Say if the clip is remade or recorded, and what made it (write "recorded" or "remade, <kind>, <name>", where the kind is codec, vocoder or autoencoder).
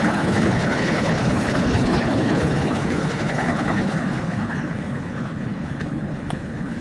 remade, codec, HILCodec